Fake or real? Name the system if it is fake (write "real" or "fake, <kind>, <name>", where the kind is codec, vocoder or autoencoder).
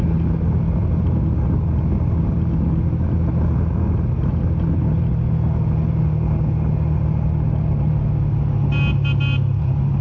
real